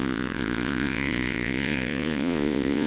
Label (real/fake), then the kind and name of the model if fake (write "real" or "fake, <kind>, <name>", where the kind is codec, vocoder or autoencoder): fake, vocoder, Vocos